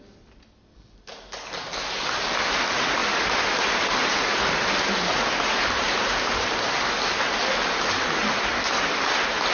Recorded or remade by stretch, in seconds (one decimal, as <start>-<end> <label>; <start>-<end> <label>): 0.0-9.5 recorded